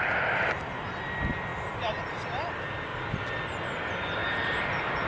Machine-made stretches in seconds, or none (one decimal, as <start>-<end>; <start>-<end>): none